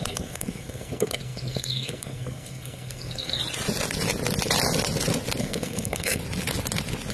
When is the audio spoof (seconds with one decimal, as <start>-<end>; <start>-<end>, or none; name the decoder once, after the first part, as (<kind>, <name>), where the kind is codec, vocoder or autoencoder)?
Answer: 0.0-3.4 (codec, SNAC); 5.4-6.2